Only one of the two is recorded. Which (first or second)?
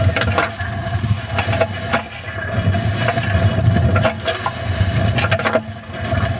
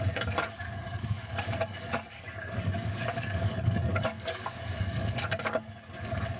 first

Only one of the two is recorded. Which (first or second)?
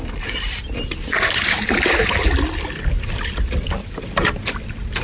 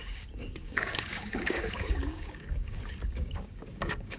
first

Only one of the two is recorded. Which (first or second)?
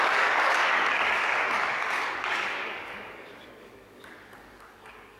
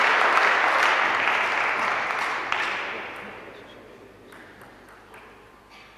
second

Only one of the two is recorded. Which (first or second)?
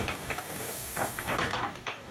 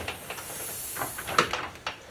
second